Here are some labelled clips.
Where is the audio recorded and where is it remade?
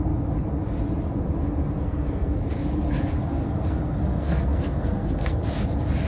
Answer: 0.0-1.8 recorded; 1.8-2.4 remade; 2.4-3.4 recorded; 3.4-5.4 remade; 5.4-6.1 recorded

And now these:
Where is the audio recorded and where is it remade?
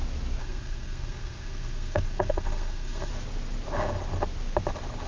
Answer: 0.0-0.4 recorded; 0.4-3.1 remade; 3.1-5.1 recorded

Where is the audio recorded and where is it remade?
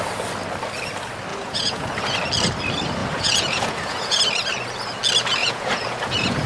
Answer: 0.0-1.3 recorded; 1.3-1.9 remade; 1.9-3.0 recorded; 3.0-4.2 remade; 4.2-5.4 recorded; 5.4-6.5 remade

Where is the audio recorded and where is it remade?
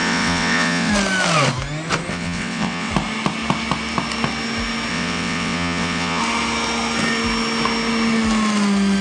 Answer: 0.0-0.9 remade; 0.9-2.1 recorded; 2.1-2.9 remade; 2.9-4.9 recorded; 4.9-6.2 remade; 6.2-9.0 recorded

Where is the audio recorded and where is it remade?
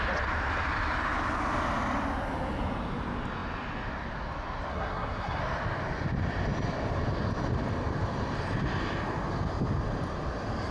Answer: 0.0-4.7 recorded; 4.7-5.4 remade; 5.4-10.7 recorded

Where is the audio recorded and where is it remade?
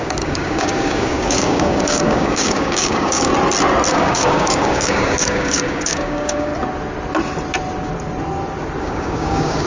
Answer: 0.0-3.3 remade; 3.3-3.9 recorded; 3.9-6.5 remade; 6.5-8.8 recorded; 8.8-9.7 remade